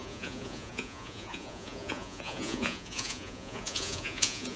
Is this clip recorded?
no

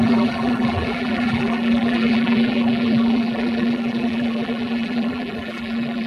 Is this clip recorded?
no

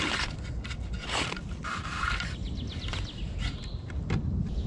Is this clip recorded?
yes